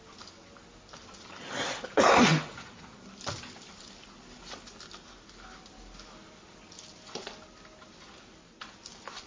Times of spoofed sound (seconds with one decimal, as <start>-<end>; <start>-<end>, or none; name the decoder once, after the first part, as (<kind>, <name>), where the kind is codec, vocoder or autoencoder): 2.2-3.0 (vocoder, Vocos)